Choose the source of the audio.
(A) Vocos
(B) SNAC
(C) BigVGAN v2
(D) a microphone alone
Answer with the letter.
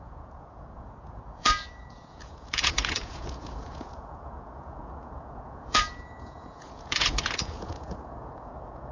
A